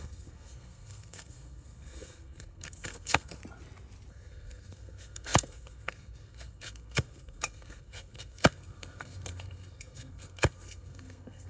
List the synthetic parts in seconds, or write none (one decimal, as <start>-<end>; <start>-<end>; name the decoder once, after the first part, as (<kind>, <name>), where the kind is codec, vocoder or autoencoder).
0.0-3.4 (codec, SNAC); 4.1-11.5